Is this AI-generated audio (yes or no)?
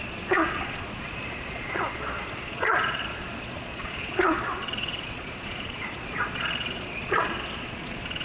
yes